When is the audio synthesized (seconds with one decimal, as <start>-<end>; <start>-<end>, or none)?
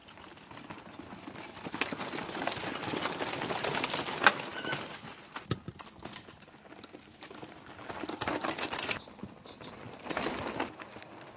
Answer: 0.0-2.5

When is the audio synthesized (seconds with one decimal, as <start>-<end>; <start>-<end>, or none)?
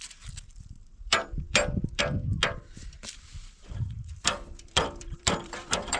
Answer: 0.8-2.0; 3.3-6.0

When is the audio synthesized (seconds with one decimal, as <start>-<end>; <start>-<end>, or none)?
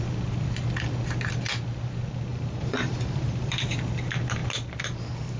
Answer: 2.3-3.6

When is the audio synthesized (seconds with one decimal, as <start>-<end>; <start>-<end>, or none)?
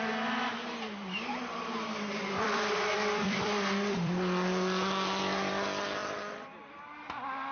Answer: 1.0-5.5; 6.0-6.8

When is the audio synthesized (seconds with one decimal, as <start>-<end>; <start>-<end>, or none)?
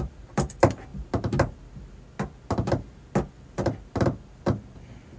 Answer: 0.0-0.9; 3.4-5.2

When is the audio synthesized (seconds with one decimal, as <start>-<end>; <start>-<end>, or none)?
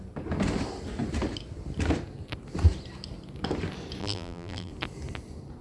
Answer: 4.0-4.7